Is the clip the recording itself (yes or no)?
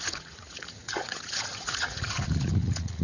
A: no